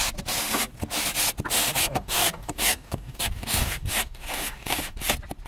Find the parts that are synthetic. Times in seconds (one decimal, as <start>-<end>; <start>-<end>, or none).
1.8-5.0